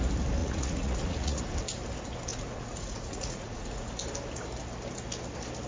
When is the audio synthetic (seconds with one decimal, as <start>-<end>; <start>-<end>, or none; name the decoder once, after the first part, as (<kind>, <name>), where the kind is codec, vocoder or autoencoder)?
0.4-1.4 (vocoder, Vocos); 2.3-3.9